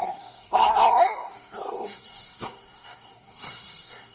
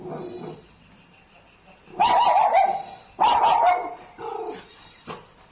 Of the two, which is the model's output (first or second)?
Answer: first